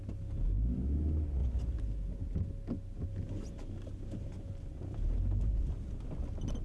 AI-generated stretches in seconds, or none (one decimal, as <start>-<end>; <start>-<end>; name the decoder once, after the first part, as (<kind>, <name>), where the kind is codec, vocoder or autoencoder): none